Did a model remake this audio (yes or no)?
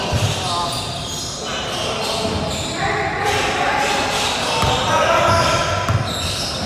no